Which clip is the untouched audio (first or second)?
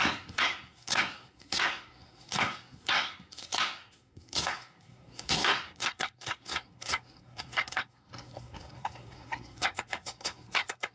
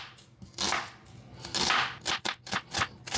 second